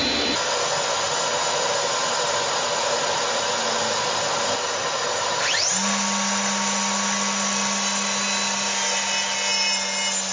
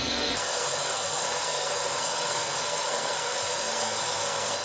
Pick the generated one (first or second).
second